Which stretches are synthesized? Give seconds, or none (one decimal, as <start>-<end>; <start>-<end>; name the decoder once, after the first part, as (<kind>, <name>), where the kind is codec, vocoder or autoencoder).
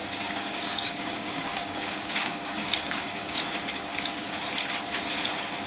0.0-3.4 (codec, DAC)